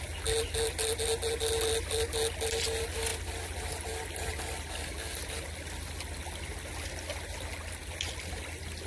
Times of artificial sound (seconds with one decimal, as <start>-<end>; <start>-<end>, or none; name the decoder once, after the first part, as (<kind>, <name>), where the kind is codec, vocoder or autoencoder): none